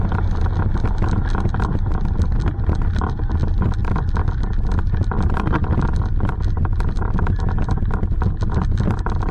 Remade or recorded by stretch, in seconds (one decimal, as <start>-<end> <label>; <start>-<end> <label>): 0.0-9.3 recorded